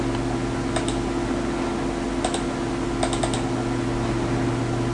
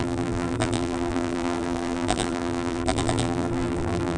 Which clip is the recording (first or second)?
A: first